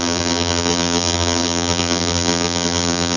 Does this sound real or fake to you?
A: fake